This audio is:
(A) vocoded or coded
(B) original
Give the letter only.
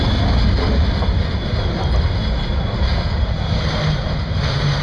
B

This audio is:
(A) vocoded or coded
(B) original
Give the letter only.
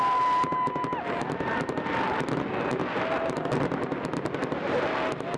B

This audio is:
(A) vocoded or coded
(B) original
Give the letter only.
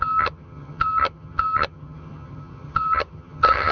A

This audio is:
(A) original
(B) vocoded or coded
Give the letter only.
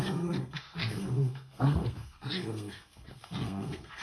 B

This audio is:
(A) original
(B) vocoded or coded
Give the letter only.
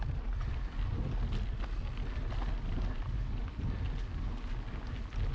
A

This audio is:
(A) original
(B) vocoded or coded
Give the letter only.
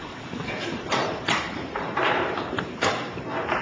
B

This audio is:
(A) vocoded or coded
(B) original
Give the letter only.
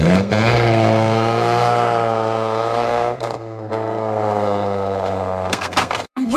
A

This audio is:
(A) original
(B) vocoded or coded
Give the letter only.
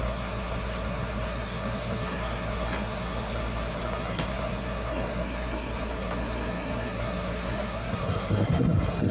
B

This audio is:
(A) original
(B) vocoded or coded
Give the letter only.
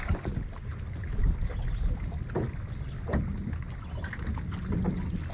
A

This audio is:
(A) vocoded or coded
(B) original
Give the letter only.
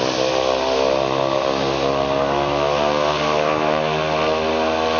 B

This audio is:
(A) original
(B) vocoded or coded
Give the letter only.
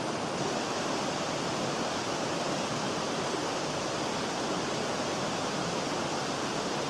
A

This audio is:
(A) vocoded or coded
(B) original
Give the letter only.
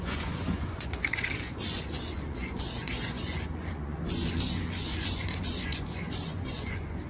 A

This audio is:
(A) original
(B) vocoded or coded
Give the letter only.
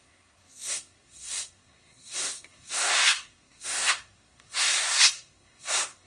B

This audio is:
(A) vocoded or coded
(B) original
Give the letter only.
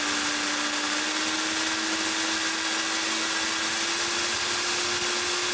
B